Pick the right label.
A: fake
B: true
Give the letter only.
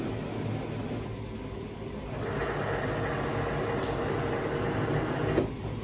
B